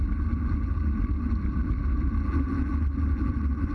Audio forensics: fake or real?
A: real